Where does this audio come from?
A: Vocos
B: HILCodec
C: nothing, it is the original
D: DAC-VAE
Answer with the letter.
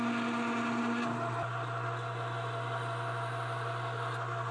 C